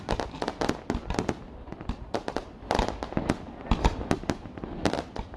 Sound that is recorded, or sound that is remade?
recorded